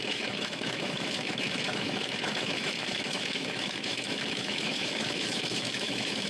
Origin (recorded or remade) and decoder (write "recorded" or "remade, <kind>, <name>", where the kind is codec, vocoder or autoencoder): remade, autoencoder, DAC-VAE